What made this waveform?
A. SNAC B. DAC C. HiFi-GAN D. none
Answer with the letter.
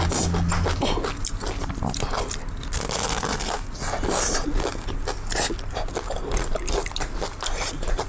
D